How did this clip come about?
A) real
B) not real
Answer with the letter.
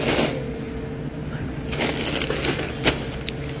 A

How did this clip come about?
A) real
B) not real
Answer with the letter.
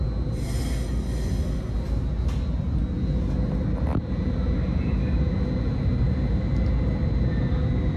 A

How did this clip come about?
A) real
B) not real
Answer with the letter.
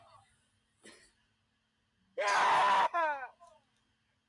A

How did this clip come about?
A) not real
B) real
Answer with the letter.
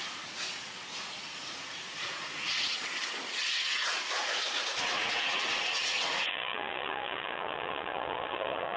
A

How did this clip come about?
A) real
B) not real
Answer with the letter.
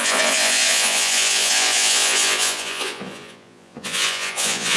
B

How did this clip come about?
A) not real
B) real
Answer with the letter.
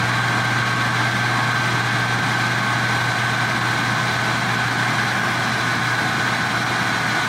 B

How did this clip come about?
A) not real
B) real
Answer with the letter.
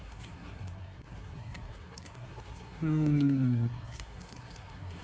A